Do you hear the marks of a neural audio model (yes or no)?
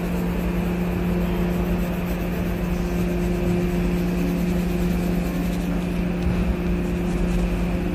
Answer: no